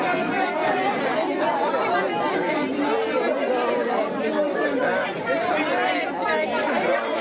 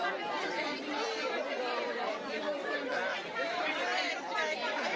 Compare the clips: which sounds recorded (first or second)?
first